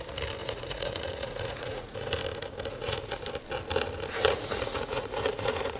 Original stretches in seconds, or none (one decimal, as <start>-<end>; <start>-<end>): 0.0-0.4; 2.1-2.7; 3.2-4.2